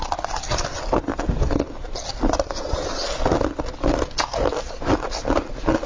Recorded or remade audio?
recorded